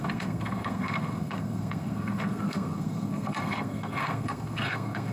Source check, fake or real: fake